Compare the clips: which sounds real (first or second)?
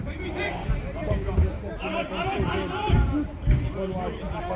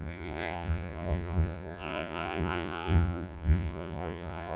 first